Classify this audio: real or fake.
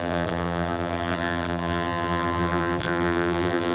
fake